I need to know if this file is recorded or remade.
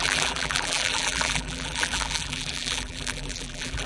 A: remade